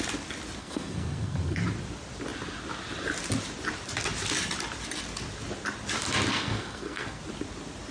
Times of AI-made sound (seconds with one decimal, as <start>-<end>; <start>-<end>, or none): 0.6-1.6; 6.3-7.2